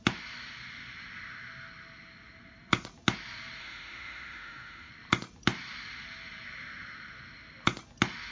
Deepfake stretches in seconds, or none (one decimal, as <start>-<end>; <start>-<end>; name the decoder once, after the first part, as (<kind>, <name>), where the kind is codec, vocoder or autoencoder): 3.6-4.9 (autoencoder, DAC-VAE)